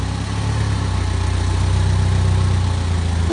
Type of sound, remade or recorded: recorded